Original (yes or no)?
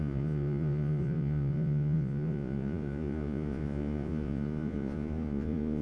no